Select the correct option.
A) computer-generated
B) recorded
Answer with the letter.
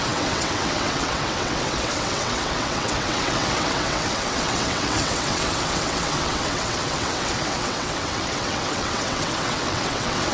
A